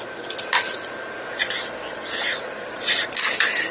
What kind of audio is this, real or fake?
real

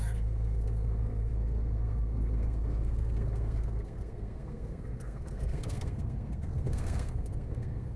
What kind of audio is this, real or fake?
fake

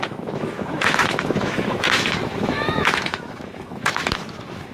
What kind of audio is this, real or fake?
fake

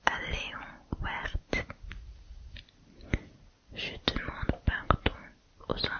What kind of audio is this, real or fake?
real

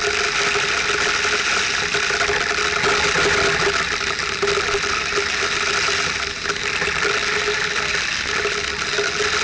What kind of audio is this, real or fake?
real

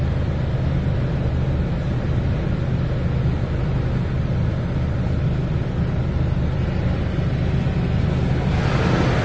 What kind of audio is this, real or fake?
real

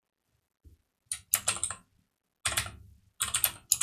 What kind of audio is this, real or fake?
real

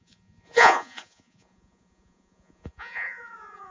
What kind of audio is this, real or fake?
fake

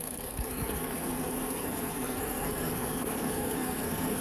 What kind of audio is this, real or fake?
fake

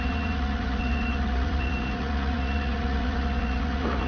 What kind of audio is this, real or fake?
fake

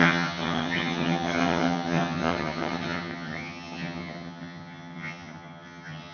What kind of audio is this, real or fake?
fake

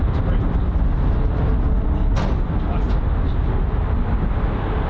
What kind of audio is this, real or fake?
real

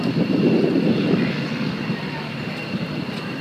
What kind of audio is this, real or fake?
real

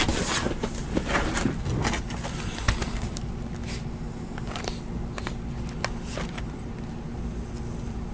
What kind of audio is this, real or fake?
real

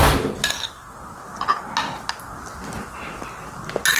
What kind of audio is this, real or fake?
real